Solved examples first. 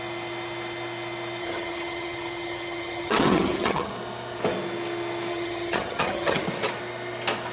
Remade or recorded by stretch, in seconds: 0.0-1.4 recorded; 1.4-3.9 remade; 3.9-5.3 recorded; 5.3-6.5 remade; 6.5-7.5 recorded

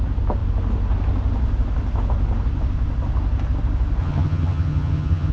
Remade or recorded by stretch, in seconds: 0.0-4.0 recorded; 4.0-5.3 remade

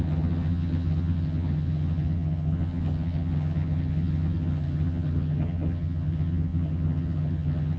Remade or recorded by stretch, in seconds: 0.0-7.8 remade